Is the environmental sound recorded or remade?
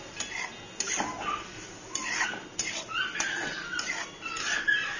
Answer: recorded